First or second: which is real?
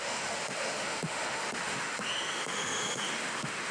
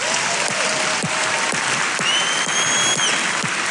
second